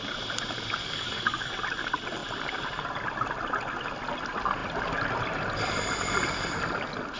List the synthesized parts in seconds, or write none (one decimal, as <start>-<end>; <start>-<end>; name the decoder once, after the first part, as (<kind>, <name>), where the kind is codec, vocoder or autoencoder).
0.8-1.5 (codec, DAC)

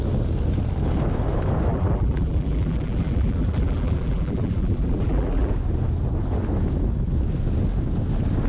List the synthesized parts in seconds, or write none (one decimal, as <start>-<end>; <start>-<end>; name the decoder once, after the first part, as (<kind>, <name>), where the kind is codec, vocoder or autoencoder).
1.7-5.5 (vocoder, BigVGAN v2)

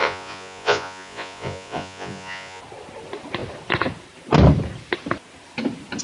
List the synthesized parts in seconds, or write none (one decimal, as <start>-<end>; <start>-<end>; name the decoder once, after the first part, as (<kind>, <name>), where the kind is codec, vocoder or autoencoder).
0.0-2.6 (vocoder, Vocos)